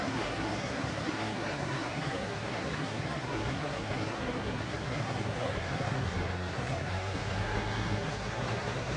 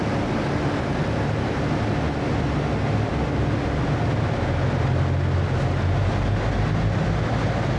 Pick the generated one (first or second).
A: first